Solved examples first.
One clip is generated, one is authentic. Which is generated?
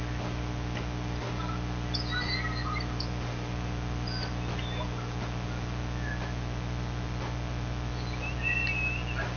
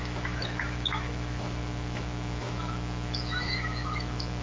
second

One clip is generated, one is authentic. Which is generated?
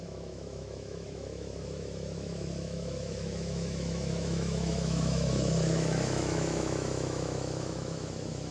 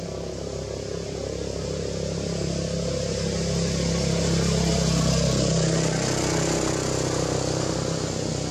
first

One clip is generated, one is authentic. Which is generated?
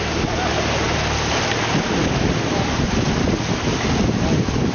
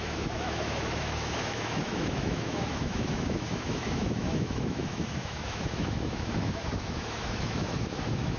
second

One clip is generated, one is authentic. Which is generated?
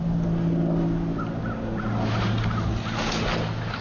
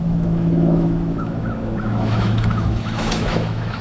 second